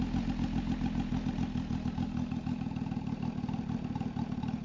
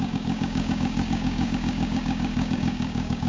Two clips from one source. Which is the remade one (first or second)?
second